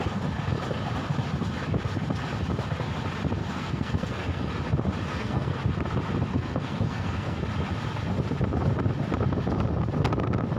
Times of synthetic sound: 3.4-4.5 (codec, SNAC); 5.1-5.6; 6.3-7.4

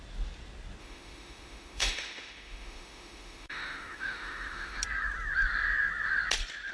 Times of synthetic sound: 0.8-4.8 (autoencoder, DAC-VAE)

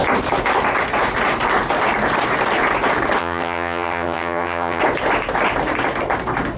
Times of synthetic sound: 3.2-4.8 (vocoder, HiFi-GAN)

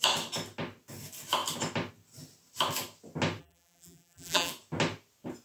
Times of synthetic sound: 3.4-4.5 (vocoder, BigVGAN v2)

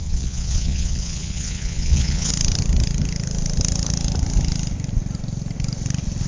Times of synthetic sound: 0.0-2.3 (vocoder, Vocos)

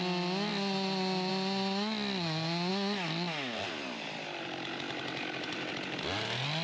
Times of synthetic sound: none

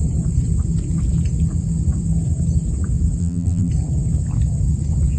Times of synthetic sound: 3.2-3.7 (vocoder, BigVGAN v2)

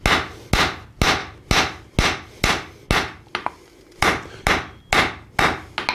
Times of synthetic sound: none